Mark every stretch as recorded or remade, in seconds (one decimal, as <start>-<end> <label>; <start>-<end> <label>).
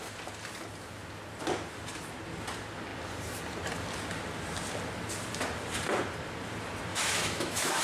0.0-6.9 recorded; 6.9-7.8 remade